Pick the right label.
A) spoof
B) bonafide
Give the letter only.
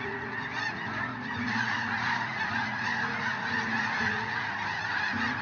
A